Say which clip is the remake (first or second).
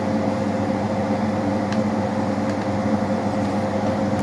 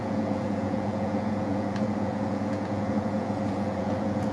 second